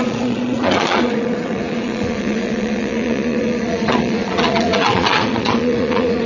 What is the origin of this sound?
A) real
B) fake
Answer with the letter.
B